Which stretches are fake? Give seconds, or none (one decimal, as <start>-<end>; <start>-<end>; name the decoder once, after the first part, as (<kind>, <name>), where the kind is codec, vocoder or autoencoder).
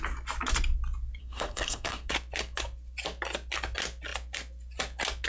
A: 1.2-2.1 (codec, SNAC)